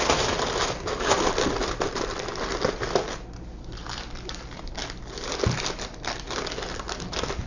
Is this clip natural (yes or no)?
yes